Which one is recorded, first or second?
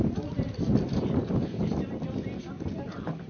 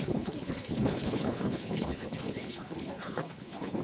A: first